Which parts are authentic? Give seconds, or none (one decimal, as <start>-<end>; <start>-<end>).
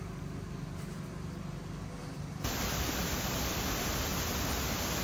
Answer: 0.0-2.0; 3.5-5.0